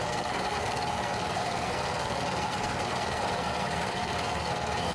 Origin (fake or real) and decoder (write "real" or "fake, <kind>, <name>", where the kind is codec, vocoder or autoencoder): fake, codec, SNAC